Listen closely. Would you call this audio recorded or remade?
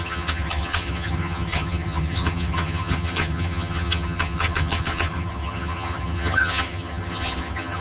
remade